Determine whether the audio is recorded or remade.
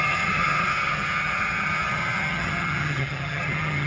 remade